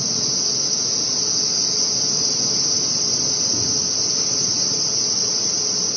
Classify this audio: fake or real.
real